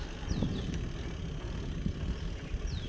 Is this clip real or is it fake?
real